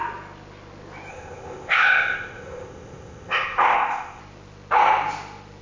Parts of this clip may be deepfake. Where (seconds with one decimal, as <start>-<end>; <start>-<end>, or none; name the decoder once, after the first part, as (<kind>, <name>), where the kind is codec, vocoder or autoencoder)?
1.1-4.2 (codec, ZipCodec)